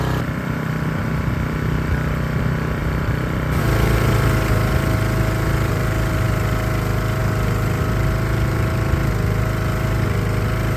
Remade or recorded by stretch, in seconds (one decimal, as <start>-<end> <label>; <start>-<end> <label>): 0.0-2.8 recorded; 2.8-3.6 remade; 3.6-10.8 recorded